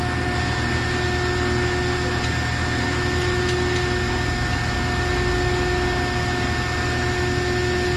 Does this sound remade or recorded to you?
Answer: recorded